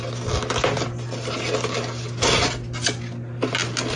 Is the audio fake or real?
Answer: real